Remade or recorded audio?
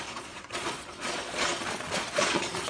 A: remade